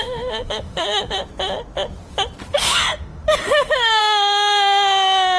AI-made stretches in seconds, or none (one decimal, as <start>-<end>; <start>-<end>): 0.0-1.2; 2.5-5.4